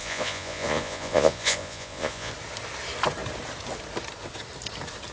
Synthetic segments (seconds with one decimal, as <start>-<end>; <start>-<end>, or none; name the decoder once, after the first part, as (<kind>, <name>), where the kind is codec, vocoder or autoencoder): 0.0-2.3 (vocoder, Vocos)